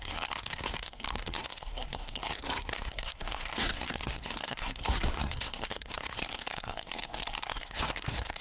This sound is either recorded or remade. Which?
remade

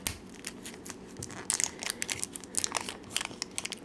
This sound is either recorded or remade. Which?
recorded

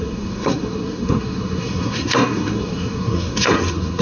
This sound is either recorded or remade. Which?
remade